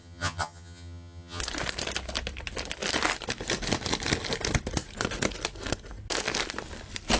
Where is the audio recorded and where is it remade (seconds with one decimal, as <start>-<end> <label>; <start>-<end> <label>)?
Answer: 0.0-1.4 remade; 1.4-7.2 recorded